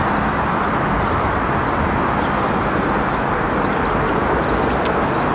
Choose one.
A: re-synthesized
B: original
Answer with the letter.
B